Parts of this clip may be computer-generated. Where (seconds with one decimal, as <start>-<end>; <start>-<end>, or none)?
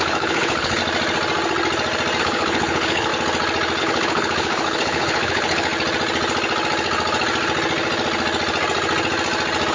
0.0-0.8; 2.2-3.1; 3.8-5.7